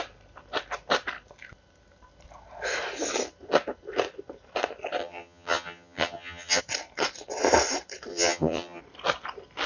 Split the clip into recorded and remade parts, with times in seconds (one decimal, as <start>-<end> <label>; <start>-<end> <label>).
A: 0.0-5.0 recorded; 5.0-6.6 remade; 6.6-8.1 recorded; 8.1-8.8 remade; 8.8-9.7 recorded